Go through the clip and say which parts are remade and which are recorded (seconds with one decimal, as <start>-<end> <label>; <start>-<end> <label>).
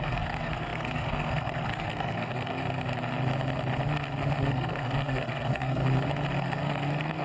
0.0-2.6 remade; 2.6-4.5 recorded; 4.5-5.8 remade; 5.8-6.4 recorded; 6.4-7.2 remade